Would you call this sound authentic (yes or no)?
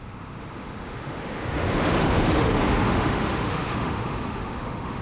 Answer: no